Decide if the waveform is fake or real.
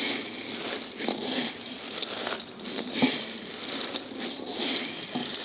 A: real